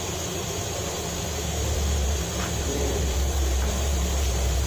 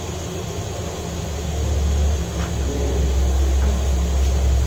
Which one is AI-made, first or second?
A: first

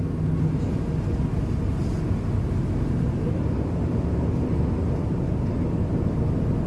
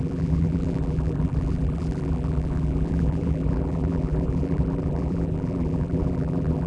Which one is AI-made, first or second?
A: second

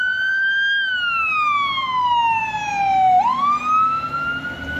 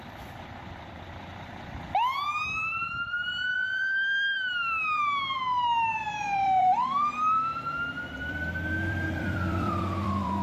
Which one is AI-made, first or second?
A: second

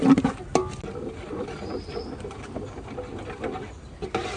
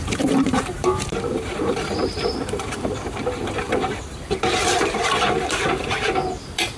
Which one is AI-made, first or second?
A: second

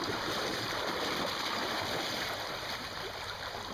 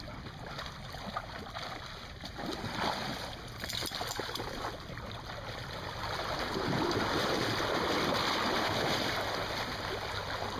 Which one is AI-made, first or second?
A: first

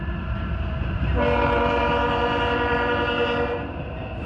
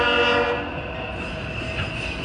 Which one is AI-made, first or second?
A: first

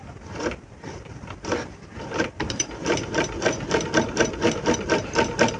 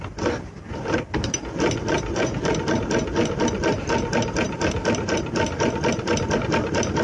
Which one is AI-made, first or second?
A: first